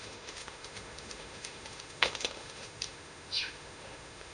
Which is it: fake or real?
fake